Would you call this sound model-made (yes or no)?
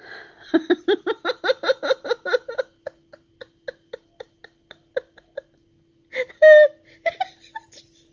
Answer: no